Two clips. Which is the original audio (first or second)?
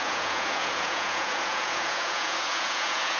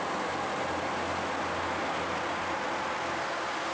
second